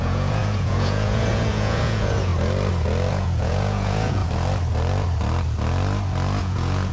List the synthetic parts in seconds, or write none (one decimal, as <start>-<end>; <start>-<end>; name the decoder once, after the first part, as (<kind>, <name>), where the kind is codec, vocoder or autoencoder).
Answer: 0.0-2.3 (vocoder, Vocos); 3.1-4.2; 6.4-6.9